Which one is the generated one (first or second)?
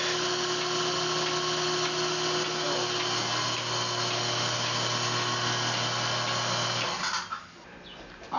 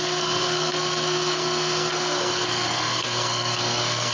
second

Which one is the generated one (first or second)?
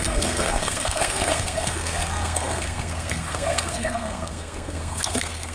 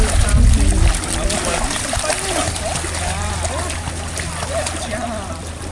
first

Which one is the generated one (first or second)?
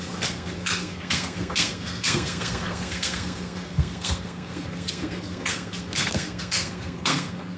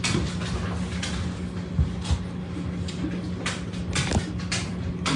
first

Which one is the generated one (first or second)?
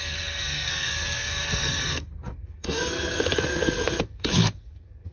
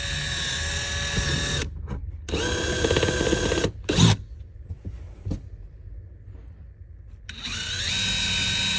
first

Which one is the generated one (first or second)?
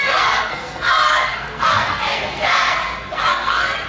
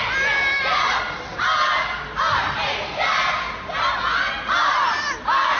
first